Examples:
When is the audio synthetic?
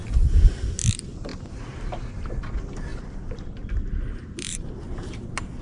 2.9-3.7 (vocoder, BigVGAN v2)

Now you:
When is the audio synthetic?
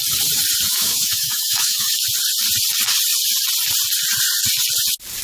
0.7-2.0 (autoencoder, DAC-VAE)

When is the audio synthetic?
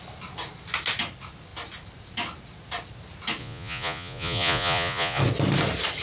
3.4-5.2 (vocoder, Vocos)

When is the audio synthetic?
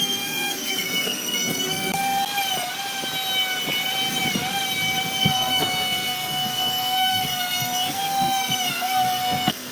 0.0-2.0 (codec, SNAC); 5.2-9.7